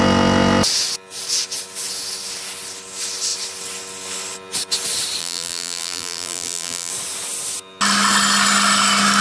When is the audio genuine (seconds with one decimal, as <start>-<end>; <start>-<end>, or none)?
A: 0.0-5.2; 6.9-9.2